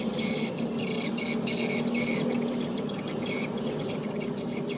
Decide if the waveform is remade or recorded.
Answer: recorded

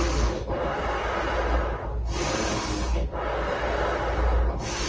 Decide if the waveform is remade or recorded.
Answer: recorded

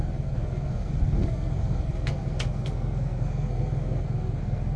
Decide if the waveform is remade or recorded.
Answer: remade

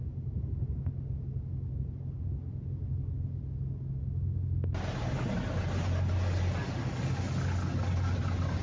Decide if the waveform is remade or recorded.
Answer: recorded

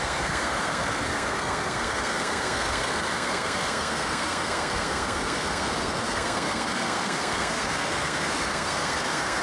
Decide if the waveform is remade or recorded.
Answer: remade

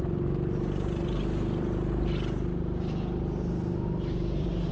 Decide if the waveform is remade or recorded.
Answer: recorded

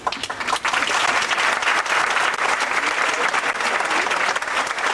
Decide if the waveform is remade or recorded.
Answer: recorded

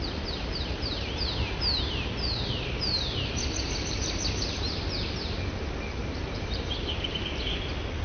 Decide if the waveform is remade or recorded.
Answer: recorded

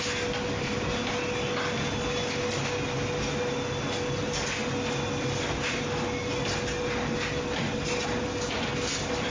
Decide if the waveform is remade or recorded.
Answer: recorded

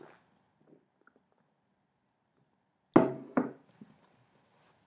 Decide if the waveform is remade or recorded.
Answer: recorded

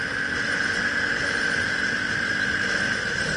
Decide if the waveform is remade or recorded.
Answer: recorded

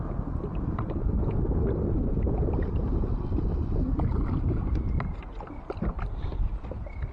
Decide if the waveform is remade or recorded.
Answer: recorded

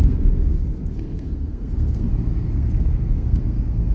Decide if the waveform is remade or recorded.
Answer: remade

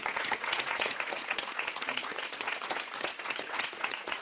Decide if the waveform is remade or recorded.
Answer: remade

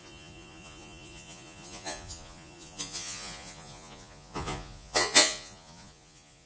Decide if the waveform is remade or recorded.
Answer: remade